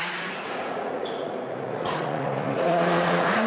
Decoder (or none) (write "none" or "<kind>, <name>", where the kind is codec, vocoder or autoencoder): vocoder, Vocos